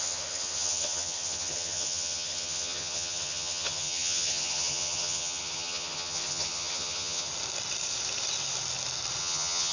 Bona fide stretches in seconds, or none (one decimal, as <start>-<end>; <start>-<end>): 7.3-9.2